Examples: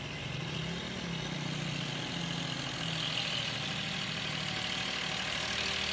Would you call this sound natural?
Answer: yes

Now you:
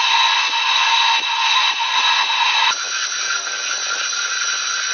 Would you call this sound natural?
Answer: yes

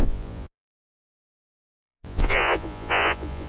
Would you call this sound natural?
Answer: no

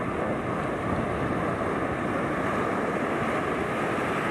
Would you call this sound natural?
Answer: yes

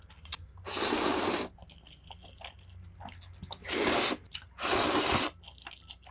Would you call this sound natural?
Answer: yes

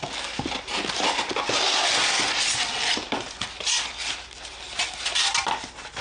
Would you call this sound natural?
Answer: yes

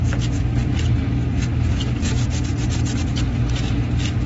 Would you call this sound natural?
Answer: yes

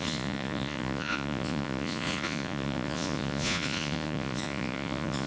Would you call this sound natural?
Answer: no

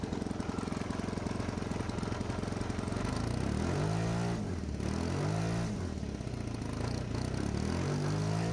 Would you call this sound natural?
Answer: yes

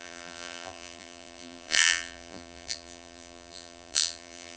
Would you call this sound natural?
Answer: no